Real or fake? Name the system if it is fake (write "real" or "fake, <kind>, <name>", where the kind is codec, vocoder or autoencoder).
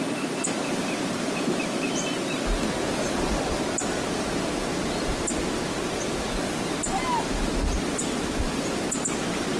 real